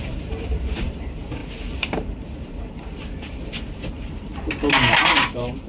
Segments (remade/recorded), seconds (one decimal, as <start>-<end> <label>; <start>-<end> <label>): 0.0-4.3 remade; 4.3-5.0 recorded; 5.0-5.7 remade